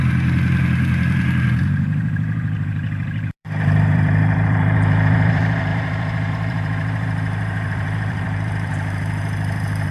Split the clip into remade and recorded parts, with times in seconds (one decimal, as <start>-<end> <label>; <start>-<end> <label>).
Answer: 0.0-9.9 remade